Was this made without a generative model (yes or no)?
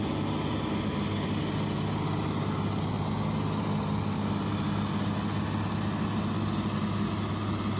yes